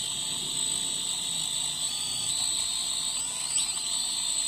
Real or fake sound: real